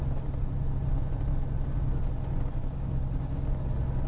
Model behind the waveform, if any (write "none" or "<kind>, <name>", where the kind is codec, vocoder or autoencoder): none